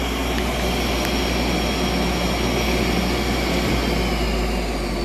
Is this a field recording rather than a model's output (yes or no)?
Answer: yes